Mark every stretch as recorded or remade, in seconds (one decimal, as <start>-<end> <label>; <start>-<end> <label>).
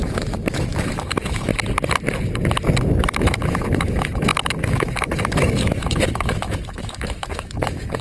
0.0-1.5 remade; 1.5-2.8 recorded; 2.8-8.0 remade